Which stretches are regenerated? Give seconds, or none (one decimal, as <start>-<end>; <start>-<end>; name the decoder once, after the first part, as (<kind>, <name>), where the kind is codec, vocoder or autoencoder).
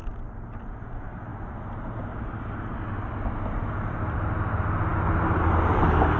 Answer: none